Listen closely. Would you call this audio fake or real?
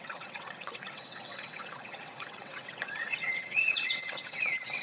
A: fake